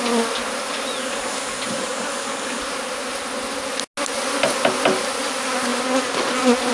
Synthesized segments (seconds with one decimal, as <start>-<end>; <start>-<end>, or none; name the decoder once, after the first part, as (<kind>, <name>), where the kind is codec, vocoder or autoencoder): 1.0-2.6 (codec, DAC)